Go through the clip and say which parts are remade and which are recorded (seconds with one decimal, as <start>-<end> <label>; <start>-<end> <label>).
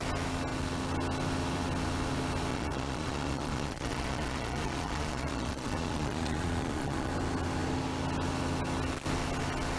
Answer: 0.0-2.5 recorded; 2.5-7.1 remade; 7.1-9.8 recorded